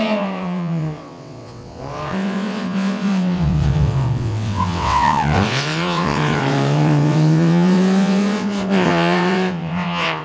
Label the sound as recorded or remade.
remade